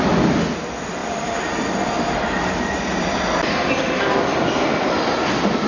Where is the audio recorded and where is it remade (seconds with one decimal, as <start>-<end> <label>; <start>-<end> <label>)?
0.0-5.7 recorded